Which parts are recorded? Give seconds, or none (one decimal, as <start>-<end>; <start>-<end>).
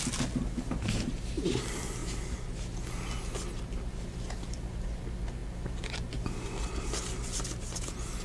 0.0-8.2